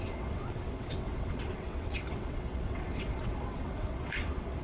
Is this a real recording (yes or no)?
no